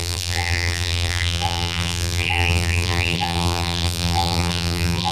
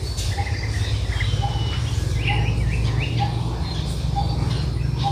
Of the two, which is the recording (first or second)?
second